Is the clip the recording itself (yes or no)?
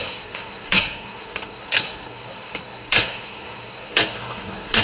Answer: no